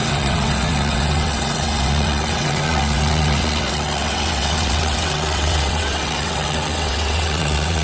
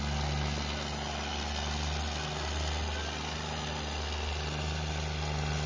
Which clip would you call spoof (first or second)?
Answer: first